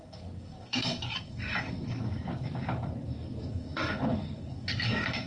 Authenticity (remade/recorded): remade